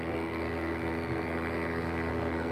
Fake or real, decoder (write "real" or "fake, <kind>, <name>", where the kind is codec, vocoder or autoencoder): fake, codec, SNAC